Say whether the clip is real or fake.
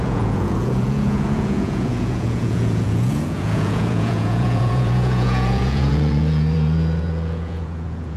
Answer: fake